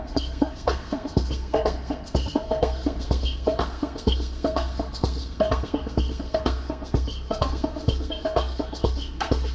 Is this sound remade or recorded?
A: remade